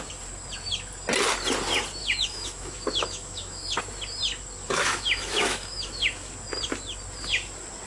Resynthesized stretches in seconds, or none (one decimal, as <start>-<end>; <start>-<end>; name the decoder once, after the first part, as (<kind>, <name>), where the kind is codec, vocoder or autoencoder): 2.0-3.8 (autoencoder, DAC-VAE); 4.6-6.3